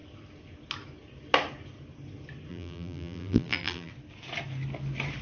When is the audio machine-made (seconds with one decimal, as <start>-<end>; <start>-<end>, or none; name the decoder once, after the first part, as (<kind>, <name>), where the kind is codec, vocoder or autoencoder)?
2.5-3.9 (vocoder, BigVGAN v2)